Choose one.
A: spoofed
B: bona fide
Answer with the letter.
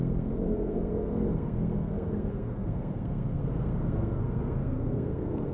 A